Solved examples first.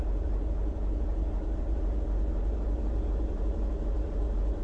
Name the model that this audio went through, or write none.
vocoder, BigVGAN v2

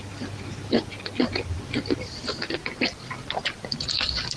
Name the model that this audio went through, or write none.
none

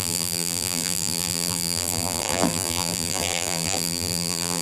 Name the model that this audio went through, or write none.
vocoder, BigVGAN v2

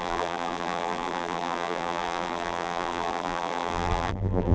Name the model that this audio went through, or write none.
vocoder, BigVGAN v2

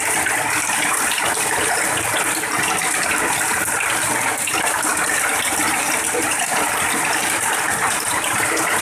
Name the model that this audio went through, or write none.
none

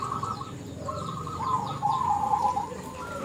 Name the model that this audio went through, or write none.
vocoder, BigVGAN v2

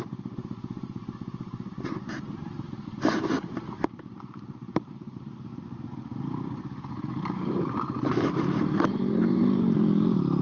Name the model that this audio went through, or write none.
vocoder, BigVGAN v2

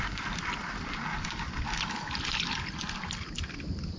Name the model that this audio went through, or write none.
none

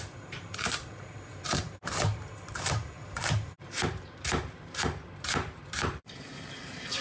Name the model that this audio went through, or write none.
vocoder, BigVGAN v2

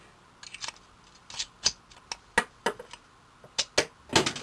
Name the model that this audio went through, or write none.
none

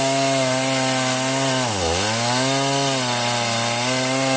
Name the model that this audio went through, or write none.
none